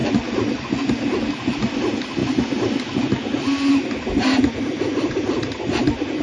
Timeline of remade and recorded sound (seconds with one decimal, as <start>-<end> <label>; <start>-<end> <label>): 0.0-6.2 recorded